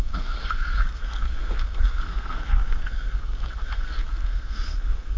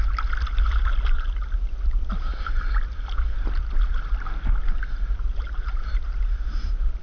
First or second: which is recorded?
second